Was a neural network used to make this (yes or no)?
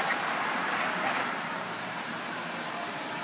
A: yes